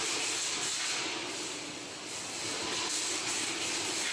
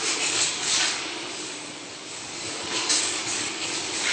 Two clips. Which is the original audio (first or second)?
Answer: first